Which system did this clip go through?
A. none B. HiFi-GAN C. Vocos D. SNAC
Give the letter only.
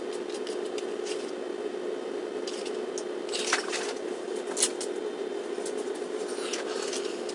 A